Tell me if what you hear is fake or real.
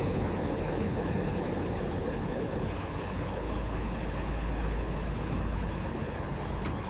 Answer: fake